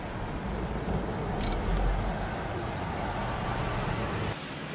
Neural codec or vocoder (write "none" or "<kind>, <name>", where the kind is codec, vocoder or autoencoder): none